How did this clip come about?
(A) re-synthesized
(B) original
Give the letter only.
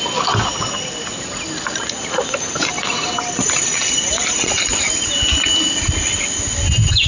B